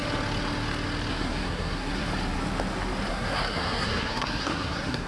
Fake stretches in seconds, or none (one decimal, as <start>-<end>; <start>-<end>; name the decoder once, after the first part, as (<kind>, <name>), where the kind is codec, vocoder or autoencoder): 1.1-2.1 (codec, SNAC); 3.1-5.1